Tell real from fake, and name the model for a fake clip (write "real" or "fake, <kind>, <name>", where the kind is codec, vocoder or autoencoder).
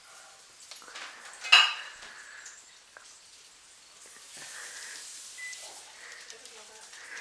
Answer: real